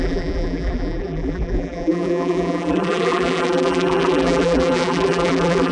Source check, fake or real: fake